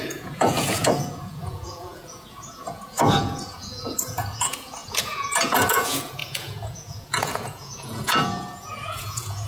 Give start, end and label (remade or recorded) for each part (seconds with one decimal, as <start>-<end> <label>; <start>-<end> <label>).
0.0-9.5 remade